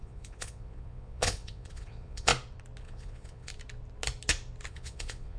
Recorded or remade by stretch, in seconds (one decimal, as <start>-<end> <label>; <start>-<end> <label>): 0.0-2.3 remade; 2.3-2.8 recorded; 2.8-3.5 remade; 3.5-4.7 recorded; 4.7-5.4 remade